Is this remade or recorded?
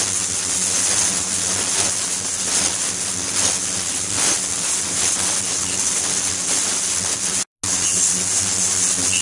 recorded